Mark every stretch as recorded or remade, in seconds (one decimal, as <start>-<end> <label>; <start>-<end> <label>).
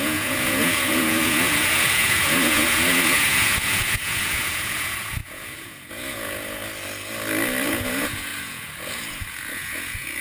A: 0.0-6.6 remade; 6.6-7.7 recorded; 7.7-10.2 remade